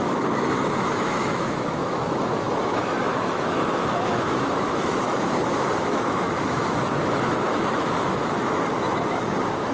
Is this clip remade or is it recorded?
remade